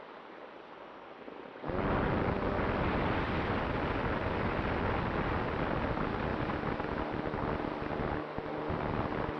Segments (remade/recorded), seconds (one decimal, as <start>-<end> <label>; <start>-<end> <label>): 0.0-9.4 recorded